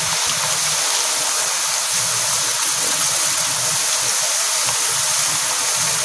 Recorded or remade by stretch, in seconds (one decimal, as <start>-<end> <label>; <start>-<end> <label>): 0.0-2.5 recorded; 2.5-3.6 remade; 3.6-6.0 recorded

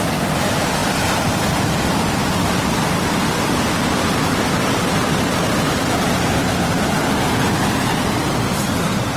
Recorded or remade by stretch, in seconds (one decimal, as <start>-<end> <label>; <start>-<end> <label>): 0.0-9.2 recorded

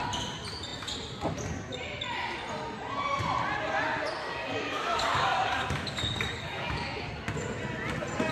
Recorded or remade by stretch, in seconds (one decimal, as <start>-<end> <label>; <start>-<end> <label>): 0.0-4.2 recorded; 4.2-7.1 remade; 7.1-8.3 recorded

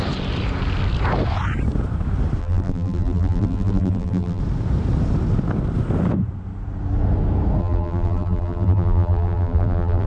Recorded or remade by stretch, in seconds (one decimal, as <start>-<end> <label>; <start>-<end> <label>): 0.0-2.4 recorded; 2.4-4.4 remade; 4.4-7.6 recorded; 7.6-10.1 remade

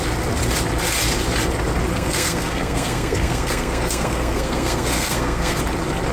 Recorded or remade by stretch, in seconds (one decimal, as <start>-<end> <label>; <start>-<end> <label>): 0.0-1.9 recorded; 1.9-5.6 remade; 5.6-6.1 recorded

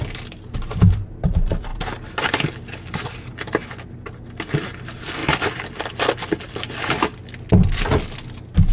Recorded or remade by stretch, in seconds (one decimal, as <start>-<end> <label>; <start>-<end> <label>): 0.0-8.7 recorded

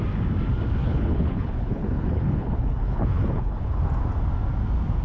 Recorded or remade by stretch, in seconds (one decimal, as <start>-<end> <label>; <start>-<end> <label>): 0.0-0.8 recorded; 0.8-3.8 remade; 3.8-5.0 recorded

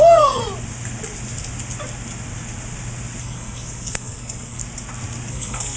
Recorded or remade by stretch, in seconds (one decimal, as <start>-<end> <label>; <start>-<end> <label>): 0.0-0.4 remade; 0.4-3.2 recorded; 3.2-4.6 remade; 4.6-5.3 recorded; 5.3-5.8 remade